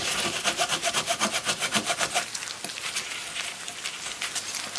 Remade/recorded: recorded